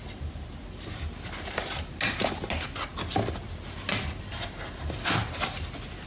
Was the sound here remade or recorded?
recorded